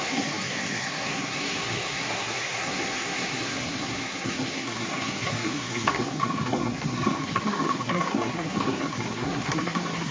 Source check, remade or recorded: remade